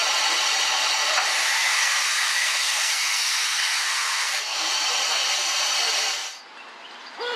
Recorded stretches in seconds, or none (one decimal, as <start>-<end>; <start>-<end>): 0.0-1.5; 4.7-7.4